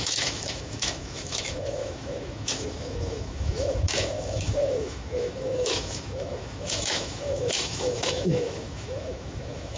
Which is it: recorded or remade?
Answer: remade